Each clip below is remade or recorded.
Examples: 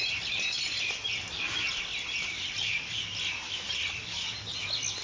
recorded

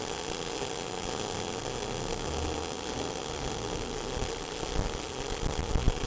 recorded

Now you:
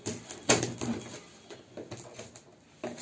recorded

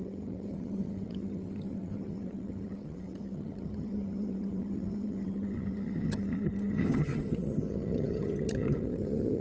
remade